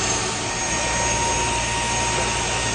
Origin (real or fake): real